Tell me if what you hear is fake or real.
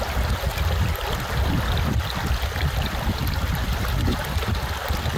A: real